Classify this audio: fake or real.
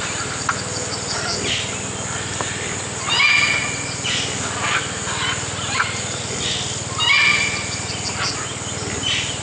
real